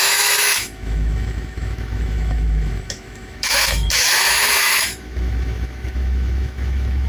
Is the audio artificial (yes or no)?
yes